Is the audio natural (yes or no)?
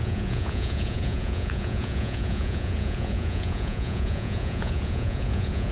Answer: no